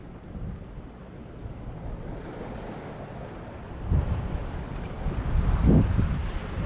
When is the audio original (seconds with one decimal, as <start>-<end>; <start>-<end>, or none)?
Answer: 0.0-6.7